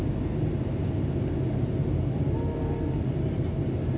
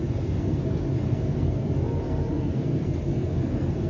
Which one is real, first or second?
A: first